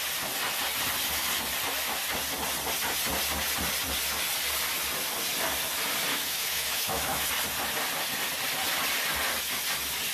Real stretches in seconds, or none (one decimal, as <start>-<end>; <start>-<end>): 0.0-6.1; 7.3-10.1